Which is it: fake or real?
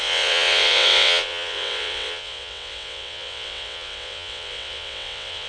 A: fake